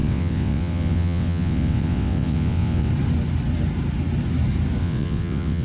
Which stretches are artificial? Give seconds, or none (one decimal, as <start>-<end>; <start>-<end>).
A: 0.0-2.9; 4.8-5.6